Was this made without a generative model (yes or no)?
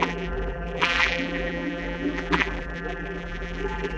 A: no